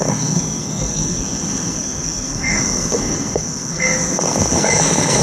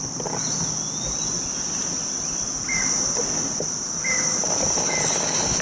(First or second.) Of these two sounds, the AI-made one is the first